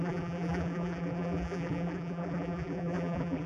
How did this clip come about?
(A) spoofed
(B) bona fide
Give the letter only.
A